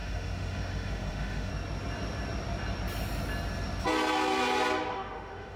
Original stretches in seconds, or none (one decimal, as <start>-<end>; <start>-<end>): 1.5-4.9